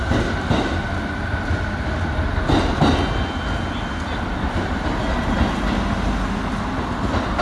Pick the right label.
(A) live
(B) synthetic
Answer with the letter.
A